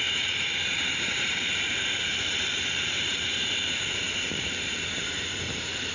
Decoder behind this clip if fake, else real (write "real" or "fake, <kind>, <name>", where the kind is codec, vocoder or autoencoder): fake, vocoder, BigVGAN v2